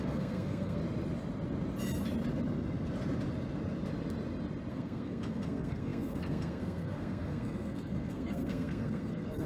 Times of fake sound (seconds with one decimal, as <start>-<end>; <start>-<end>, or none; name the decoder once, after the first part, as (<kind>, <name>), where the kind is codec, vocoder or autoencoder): 0.0-0.8 (codec, SNAC); 4.7-9.5